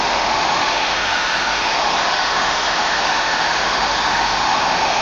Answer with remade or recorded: remade